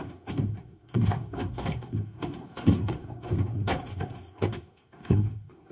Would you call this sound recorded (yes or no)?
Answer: no